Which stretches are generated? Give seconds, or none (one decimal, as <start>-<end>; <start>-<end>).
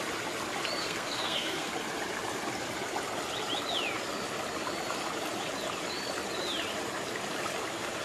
0.8-1.7